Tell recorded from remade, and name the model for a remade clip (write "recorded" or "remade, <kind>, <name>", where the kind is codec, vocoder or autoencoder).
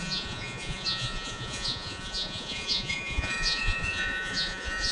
remade, vocoder, Vocos